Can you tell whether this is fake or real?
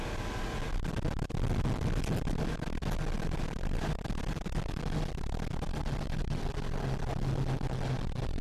real